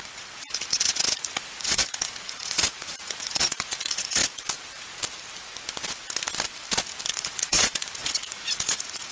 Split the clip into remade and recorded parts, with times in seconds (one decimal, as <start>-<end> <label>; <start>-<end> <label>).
0.0-4.2 remade; 4.2-7.1 recorded; 7.1-9.1 remade